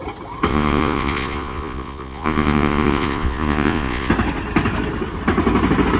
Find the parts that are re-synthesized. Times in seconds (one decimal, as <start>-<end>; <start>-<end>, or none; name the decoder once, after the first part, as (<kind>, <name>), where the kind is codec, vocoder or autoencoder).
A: 0.5-4.1 (vocoder, Vocos)